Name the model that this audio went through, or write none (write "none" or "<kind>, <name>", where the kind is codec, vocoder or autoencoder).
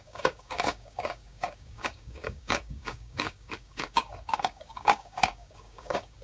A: codec, DAC